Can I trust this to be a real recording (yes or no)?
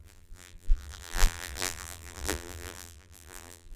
no